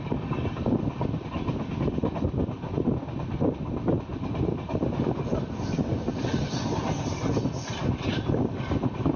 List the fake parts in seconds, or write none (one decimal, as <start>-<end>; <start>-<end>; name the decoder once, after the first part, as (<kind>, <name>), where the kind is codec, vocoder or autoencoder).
none